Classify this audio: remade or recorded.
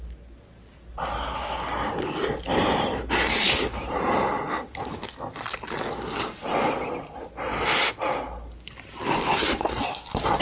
recorded